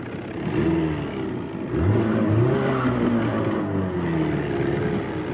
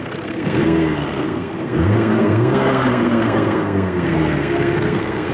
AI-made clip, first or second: second